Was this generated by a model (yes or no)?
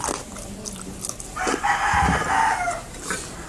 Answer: no